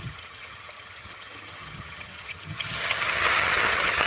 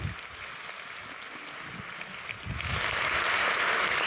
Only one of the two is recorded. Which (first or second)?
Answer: second